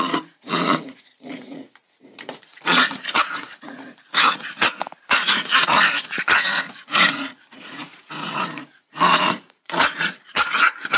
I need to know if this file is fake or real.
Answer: fake